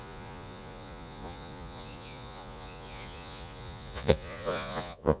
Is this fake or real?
fake